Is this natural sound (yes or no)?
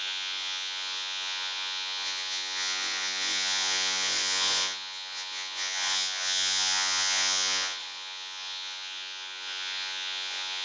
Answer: no